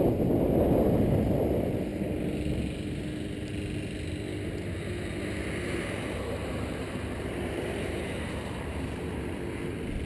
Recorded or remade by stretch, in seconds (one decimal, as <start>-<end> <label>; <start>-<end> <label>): 0.0-6.4 recorded; 6.4-9.3 remade; 9.3-10.1 recorded